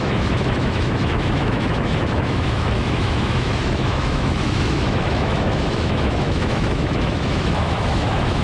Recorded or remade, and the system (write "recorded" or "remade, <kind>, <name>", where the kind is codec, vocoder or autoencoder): remade, autoencoder, DAC-VAE